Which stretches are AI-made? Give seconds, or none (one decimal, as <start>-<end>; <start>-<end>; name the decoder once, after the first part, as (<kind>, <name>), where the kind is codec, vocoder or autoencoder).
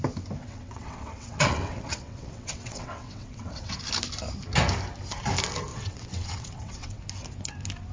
0.4-3.8 (vocoder, WaveNeXt); 5.7-7.0